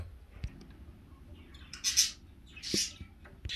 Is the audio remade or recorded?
recorded